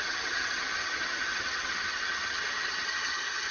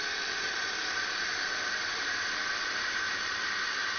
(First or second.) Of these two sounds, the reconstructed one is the first